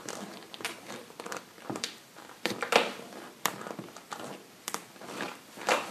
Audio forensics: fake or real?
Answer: fake